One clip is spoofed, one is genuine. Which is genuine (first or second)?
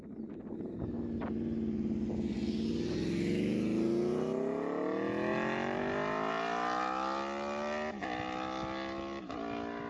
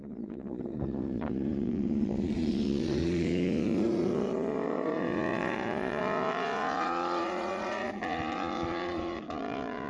first